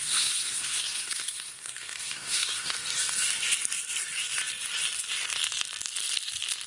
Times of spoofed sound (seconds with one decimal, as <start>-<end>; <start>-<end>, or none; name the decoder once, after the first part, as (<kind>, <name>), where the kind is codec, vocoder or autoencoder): 0.0-2.7 (codec, SNAC)